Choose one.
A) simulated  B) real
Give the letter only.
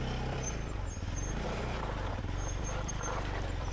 A